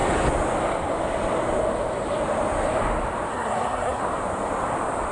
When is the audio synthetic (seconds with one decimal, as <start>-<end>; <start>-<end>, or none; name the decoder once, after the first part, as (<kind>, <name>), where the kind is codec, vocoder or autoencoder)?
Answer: 3.3-4.0 (codec, SNAC)